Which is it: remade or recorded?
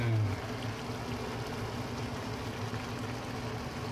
recorded